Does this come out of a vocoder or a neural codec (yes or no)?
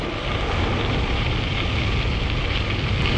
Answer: no